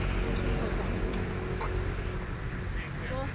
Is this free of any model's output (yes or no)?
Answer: yes